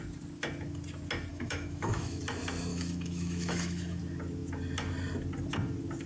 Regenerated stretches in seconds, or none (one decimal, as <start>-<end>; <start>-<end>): 1.3-2.2; 2.7-4.0